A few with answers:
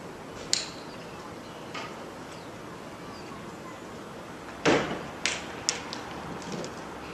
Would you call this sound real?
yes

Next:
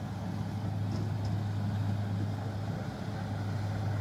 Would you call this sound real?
yes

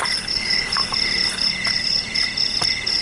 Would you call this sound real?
yes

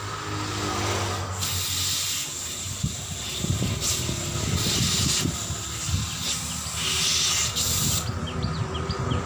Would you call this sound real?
yes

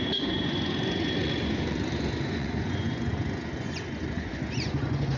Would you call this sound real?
no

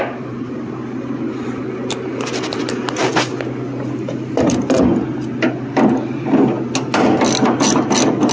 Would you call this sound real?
yes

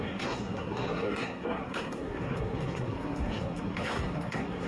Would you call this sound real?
no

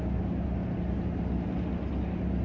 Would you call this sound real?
yes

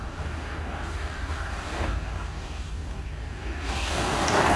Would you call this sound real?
no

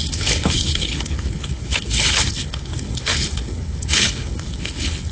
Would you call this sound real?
no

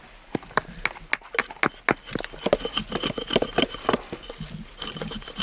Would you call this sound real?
yes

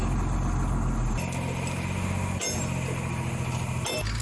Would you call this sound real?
yes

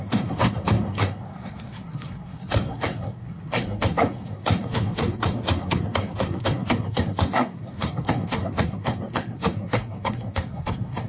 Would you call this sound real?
no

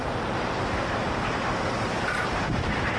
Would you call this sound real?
no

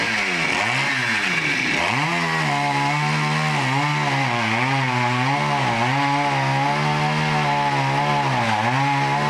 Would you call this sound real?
yes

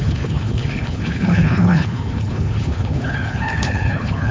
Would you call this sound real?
no